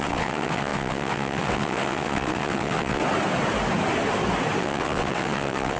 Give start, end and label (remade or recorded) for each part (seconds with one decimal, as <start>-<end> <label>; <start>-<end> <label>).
0.0-3.0 remade; 3.0-4.6 recorded; 4.6-5.8 remade